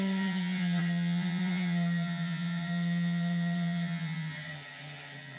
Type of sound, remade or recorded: remade